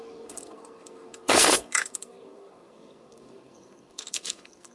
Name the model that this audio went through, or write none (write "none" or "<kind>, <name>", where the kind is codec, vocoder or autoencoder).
codec, SNAC